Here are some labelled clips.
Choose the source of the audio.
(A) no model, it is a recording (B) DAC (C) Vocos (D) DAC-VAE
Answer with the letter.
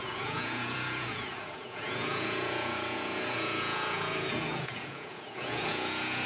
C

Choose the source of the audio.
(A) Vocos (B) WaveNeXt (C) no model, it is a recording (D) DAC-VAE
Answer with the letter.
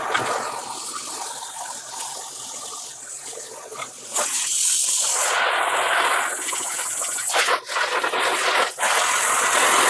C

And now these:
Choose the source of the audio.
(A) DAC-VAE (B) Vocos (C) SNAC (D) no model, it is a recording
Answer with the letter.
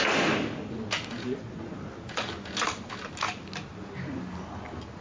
D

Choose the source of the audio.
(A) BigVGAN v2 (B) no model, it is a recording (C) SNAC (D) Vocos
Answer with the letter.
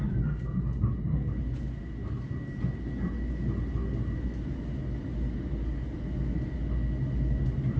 B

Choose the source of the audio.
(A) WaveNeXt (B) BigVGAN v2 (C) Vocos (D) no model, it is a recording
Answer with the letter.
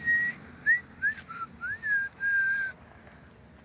D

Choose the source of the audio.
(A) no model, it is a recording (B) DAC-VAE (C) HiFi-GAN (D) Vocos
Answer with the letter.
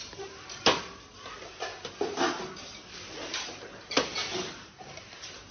A